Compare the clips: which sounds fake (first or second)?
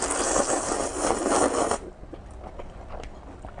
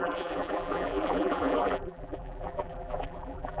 second